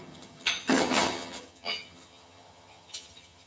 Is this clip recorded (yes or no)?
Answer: no